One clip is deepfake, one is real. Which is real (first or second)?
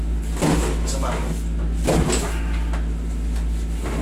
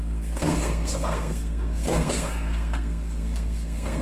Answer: first